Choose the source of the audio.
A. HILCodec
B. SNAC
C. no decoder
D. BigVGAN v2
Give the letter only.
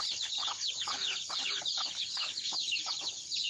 A